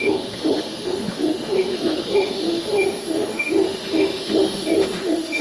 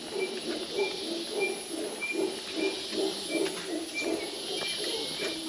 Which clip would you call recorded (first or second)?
second